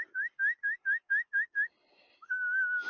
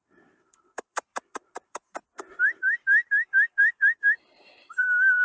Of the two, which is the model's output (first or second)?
second